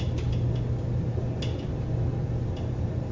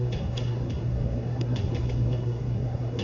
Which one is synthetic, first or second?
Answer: second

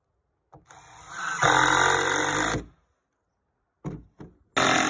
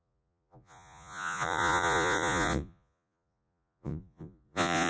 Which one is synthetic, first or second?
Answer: second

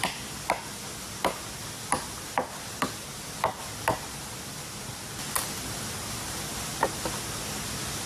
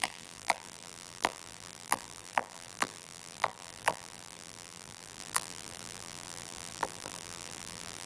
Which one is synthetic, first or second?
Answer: second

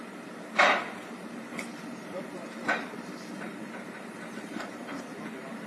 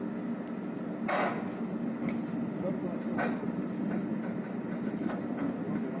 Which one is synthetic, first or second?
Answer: first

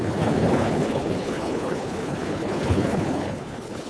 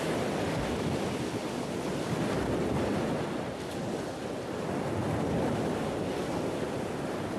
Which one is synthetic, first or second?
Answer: first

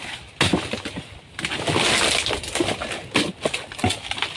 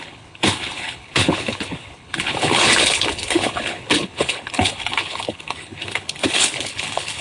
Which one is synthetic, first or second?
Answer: second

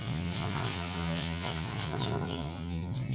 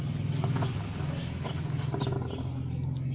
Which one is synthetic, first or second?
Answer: first